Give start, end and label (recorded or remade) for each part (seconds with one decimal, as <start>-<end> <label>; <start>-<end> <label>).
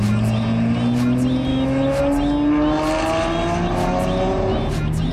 0.0-1.5 recorded; 1.5-2.0 remade; 2.0-5.1 recorded